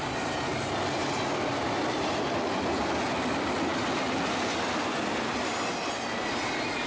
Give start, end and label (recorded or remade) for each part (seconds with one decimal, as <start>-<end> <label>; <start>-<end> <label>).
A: 0.0-6.9 recorded